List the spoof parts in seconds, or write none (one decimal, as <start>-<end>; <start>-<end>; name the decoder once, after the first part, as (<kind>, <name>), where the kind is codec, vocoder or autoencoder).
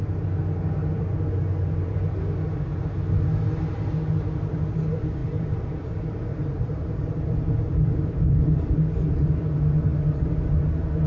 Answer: 0.8-2.2 (vocoder, BigVGAN v2); 5.2-8.7